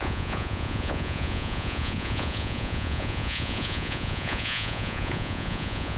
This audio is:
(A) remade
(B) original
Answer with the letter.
A